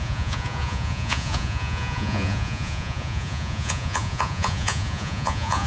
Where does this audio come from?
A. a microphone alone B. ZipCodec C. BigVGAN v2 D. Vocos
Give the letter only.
D